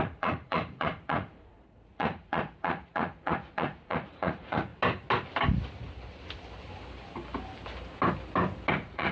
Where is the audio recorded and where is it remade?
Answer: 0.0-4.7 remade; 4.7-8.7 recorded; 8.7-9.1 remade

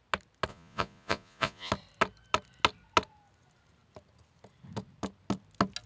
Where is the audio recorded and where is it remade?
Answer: 0.0-0.5 recorded; 0.5-1.7 remade; 1.7-5.9 recorded